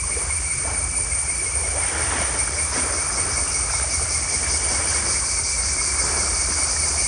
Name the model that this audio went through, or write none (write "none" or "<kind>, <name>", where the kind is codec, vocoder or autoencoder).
none